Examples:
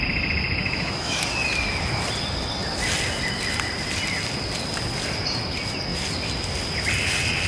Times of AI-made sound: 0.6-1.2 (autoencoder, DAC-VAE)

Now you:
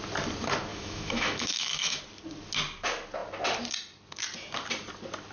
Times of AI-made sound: 0.7-2.0 (autoencoder, DAC-VAE)

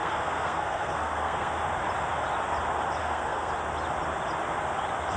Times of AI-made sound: 0.0-1.6 (codec, SNAC); 3.0-3.5

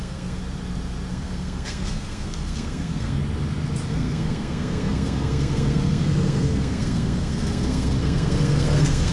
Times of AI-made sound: 0.0-0.4 (codec, SNAC); 1.1-3.2; 3.9-9.1

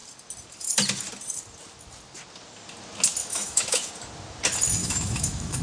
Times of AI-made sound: 3.2-3.9 (autoencoder, DAC-VAE); 4.8-5.6

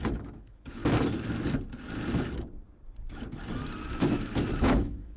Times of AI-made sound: 0.0-0.8 (autoencoder, DAC-VAE); 3.9-5.2